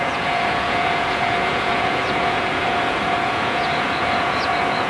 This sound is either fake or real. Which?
fake